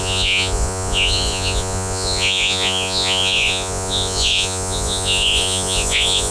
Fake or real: fake